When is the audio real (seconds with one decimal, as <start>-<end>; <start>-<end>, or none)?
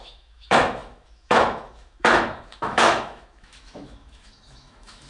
none